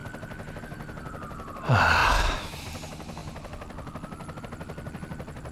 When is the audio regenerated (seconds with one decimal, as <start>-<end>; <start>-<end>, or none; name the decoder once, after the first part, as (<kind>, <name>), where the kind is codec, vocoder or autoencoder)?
none